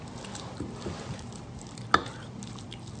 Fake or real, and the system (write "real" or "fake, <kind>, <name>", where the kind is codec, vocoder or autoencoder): real